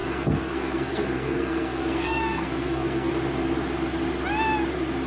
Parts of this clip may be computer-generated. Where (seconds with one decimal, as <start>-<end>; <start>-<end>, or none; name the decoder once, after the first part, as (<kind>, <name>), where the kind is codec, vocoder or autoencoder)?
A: 0.0-3.1 (codec, SNAC)